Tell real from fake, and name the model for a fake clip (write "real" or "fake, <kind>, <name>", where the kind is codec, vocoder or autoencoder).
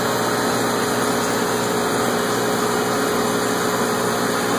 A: real